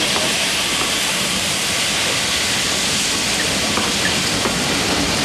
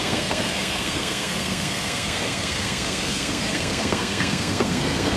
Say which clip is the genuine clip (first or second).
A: first